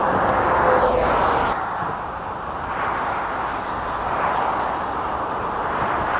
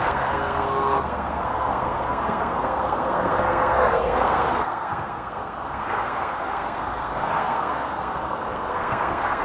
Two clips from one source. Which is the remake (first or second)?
second